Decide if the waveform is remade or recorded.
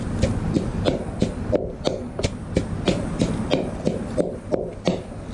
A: recorded